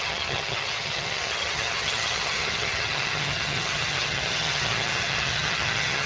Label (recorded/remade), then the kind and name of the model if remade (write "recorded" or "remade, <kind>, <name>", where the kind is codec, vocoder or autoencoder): remade, vocoder, HiFi-GAN